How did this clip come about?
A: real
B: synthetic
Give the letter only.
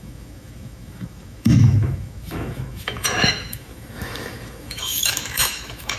B